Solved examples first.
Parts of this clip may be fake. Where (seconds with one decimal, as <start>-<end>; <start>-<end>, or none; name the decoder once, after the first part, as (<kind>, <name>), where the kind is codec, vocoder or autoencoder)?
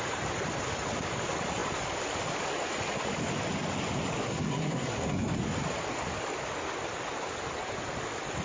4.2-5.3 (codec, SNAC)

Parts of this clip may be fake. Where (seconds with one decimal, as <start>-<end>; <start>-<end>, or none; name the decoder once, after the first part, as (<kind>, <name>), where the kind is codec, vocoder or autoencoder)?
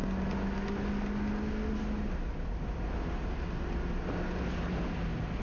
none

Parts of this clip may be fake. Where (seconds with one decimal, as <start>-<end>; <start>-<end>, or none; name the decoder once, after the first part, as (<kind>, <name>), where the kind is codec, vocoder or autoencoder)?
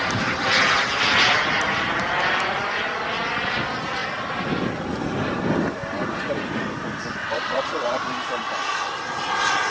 7.2-8.0 (vocoder, WaveNeXt)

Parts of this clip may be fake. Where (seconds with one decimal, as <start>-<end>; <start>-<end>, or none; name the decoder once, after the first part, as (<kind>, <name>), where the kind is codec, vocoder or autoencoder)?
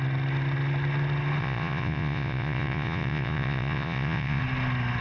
1.4-4.4 (vocoder, Vocos)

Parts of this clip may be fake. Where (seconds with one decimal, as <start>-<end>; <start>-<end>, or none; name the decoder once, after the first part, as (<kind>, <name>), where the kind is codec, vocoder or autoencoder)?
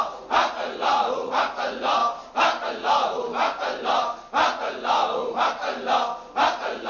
0.0-2.0 (vocoder, Vocos); 2.7-3.2; 4.5-5.2; 6.5-6.9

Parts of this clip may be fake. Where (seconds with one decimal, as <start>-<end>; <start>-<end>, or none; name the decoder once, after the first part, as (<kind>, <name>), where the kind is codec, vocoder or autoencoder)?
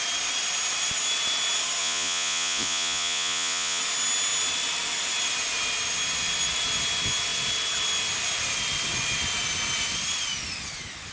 1.8-3.8 (vocoder, Vocos)